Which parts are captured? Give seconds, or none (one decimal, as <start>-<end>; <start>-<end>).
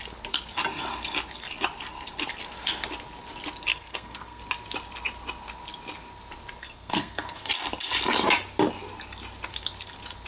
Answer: 0.0-3.7; 4.4-6.6; 7.5-10.3